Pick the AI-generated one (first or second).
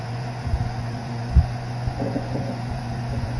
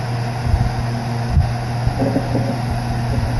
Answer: first